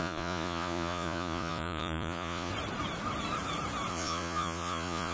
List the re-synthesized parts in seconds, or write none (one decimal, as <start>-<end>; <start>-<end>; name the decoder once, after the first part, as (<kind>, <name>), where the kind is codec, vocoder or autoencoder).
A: 0.0-2.5 (vocoder, Vocos); 3.9-5.1